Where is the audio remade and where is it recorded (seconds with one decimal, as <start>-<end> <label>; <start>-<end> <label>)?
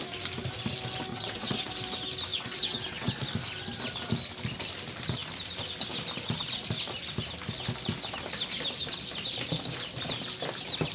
0.0-1.1 recorded; 1.1-1.7 remade; 1.7-2.3 recorded; 2.3-3.1 remade; 3.1-10.9 recorded